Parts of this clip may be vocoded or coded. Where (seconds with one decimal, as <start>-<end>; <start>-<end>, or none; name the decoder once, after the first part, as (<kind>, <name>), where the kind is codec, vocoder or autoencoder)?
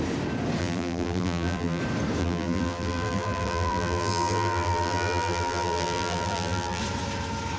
0.6-1.8 (vocoder, BigVGAN v2); 2.2-6.8